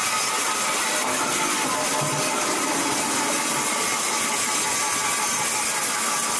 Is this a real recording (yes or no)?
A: yes